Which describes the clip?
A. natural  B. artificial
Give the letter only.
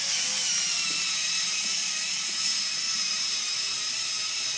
A